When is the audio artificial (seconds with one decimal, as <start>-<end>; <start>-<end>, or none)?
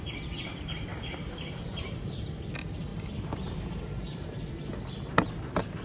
0.9-2.2; 2.9-4.5